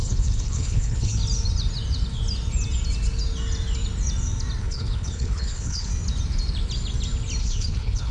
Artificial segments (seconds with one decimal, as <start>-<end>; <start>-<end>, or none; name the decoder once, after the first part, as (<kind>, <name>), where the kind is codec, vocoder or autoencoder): 0.0-1.2 (codec, HILCodec); 4.6-5.9; 7.4-8.1